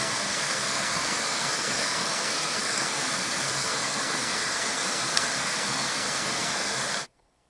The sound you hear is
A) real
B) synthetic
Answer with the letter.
B